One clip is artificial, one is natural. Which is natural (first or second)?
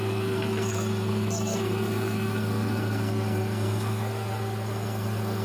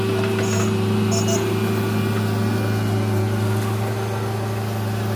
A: second